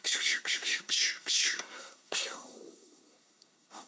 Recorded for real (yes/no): no